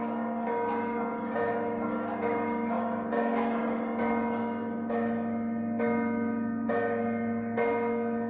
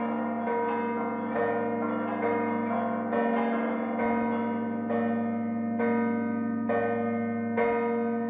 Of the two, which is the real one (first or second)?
second